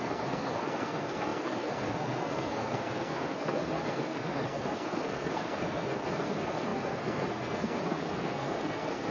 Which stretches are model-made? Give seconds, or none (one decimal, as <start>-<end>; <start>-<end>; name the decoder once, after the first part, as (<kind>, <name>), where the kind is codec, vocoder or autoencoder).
0.0-9.1 (codec, SNAC)